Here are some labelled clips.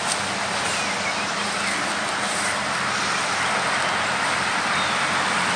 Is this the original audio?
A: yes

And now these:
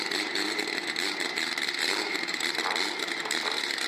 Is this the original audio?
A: no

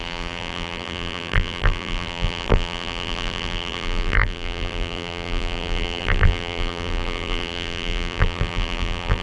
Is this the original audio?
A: no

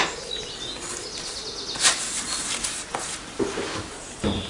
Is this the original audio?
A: yes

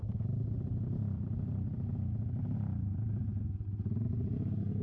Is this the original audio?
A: no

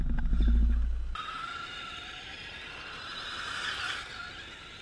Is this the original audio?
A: yes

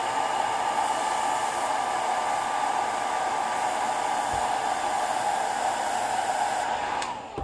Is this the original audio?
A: yes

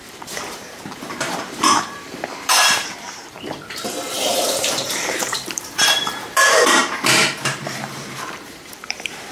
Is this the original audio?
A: no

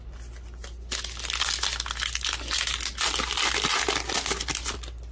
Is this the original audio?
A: yes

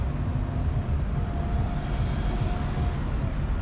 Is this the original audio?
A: yes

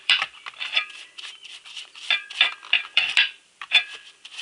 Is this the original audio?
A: no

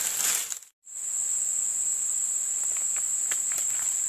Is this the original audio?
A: yes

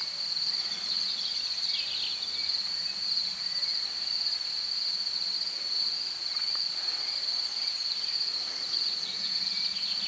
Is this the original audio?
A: yes